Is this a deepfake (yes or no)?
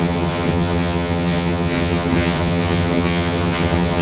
yes